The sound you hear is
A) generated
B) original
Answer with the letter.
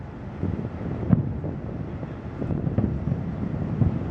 B